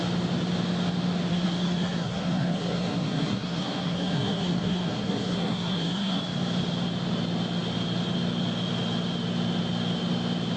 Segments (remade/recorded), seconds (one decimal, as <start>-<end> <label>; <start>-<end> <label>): 0.0-1.3 recorded; 1.3-6.2 remade; 6.2-10.6 recorded

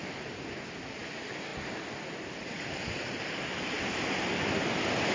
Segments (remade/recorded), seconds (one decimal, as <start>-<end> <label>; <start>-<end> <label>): 0.0-5.1 recorded

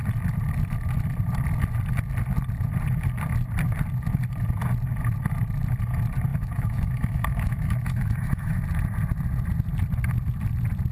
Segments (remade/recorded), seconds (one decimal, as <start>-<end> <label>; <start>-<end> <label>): 0.0-6.3 recorded; 6.3-8.6 remade; 8.6-10.9 recorded

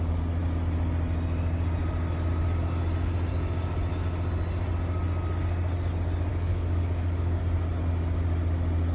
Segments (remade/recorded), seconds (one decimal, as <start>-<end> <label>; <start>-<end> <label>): 0.0-6.3 recorded; 6.3-7.4 remade; 7.4-8.9 recorded

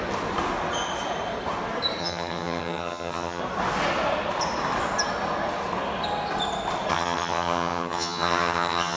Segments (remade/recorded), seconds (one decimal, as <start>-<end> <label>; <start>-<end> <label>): 0.0-2.0 recorded; 2.0-3.4 remade; 3.4-6.9 recorded; 6.9-9.0 remade

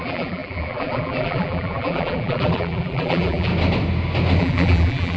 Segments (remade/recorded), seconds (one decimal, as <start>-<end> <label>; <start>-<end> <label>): 0.0-3.5 remade; 3.5-4.4 recorded; 4.4-5.2 remade